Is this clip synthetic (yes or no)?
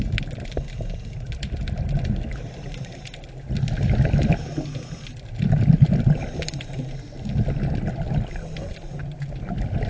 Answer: no